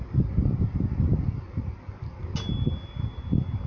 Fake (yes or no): no